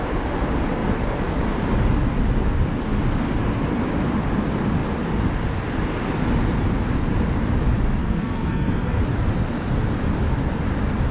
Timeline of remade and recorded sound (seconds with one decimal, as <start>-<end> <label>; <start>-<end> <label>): 0.0-8.0 recorded; 8.0-9.0 remade; 9.0-11.1 recorded